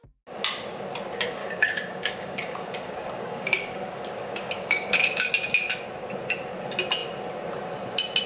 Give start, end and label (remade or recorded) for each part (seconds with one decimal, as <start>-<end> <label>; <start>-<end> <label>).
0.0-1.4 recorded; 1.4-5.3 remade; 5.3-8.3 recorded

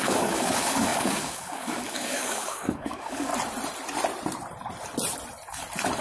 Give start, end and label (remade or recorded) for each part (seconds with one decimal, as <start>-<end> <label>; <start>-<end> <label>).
0.0-3.3 remade; 3.3-6.0 recorded

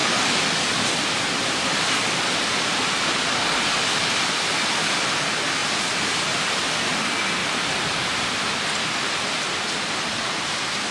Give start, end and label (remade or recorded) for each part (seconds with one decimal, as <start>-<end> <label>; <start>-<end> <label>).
0.0-0.8 remade; 0.8-10.9 recorded